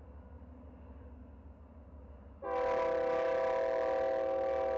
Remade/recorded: recorded